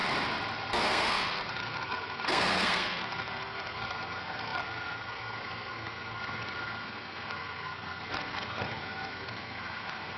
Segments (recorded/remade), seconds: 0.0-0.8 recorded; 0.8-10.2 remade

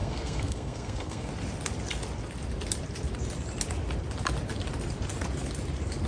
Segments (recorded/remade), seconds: 0.0-1.3 remade; 1.3-6.1 recorded

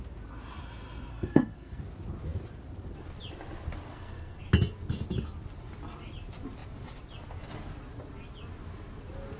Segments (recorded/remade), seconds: 0.0-1.1 recorded; 1.1-1.8 remade; 1.8-3.9 recorded; 3.9-4.4 remade; 4.4-9.4 recorded

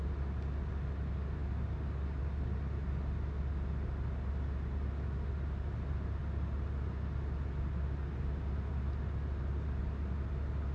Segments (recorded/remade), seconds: 0.0-10.7 recorded